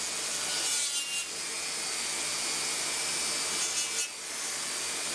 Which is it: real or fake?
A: real